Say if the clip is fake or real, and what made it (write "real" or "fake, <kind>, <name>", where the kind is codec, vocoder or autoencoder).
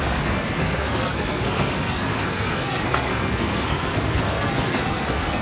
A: fake, codec, SNAC